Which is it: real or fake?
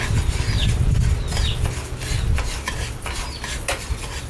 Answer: real